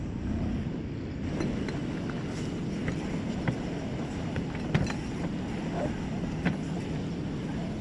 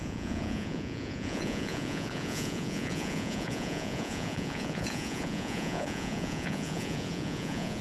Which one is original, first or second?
first